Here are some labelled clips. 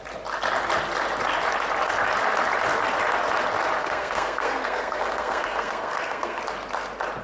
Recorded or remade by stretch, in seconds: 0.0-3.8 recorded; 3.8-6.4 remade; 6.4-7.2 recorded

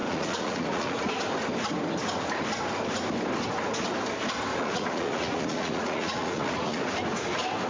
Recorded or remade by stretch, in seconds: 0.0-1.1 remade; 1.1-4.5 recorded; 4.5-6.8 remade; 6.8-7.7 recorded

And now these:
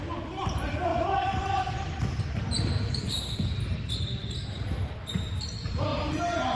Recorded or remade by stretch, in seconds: 0.0-6.6 recorded

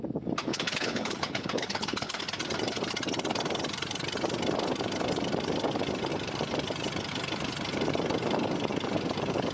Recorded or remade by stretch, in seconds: 0.0-0.5 recorded; 0.5-2.2 remade; 2.2-9.5 recorded

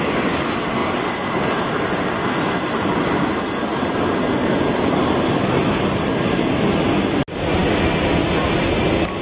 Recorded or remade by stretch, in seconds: 0.0-0.8 recorded; 0.8-4.0 remade; 4.0-4.4 recorded; 4.4-6.6 remade; 6.6-9.2 recorded

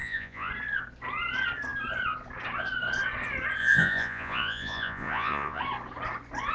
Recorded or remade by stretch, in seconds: 0.0-0.5 remade; 0.5-3.6 recorded; 3.6-5.6 remade; 5.6-6.5 recorded

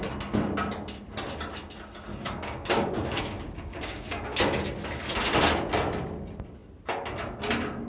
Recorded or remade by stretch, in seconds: 0.0-2.1 recorded; 2.1-4.4 remade; 4.4-7.9 recorded